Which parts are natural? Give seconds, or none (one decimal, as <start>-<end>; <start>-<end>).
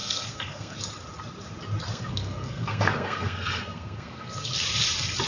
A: 0.8-1.9; 4.5-5.3